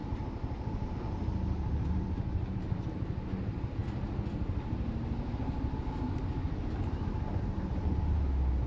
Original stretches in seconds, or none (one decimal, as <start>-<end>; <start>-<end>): 0.0-8.7